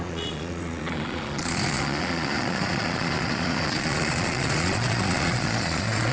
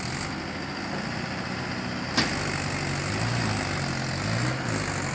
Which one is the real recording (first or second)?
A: second